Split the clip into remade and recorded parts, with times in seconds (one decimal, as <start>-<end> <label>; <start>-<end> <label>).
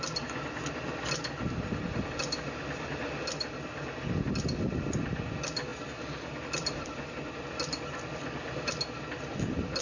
0.0-9.8 recorded